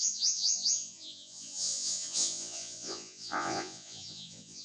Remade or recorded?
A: remade